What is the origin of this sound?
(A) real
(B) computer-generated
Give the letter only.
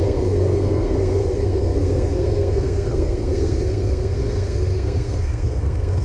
B